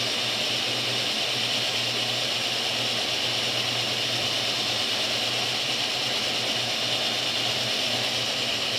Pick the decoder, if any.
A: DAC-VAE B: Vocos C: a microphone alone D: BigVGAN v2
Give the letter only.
C